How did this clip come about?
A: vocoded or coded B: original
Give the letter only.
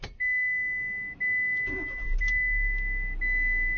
B